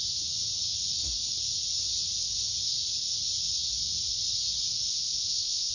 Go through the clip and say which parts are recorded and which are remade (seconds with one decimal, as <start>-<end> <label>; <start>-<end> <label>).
0.0-4.9 recorded; 4.9-5.7 remade